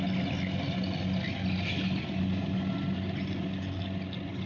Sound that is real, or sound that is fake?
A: real